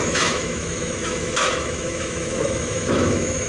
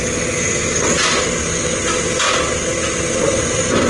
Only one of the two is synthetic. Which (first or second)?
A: first